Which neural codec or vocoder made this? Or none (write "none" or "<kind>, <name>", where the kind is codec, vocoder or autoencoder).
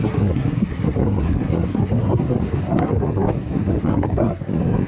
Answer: codec, SNAC